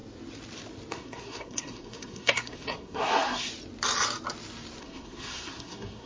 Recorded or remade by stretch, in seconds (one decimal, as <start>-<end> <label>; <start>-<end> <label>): 0.0-0.9 recorded; 0.9-3.5 remade; 3.5-4.8 recorded; 4.8-6.1 remade